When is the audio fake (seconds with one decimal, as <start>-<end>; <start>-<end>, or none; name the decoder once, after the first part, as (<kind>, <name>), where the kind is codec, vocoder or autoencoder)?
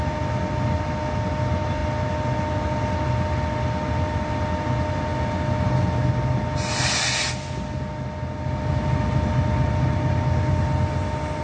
none